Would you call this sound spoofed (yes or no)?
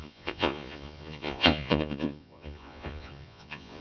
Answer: yes